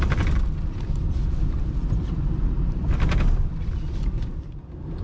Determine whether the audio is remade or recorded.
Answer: remade